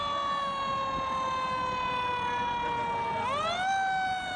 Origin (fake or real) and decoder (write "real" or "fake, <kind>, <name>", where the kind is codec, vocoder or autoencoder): real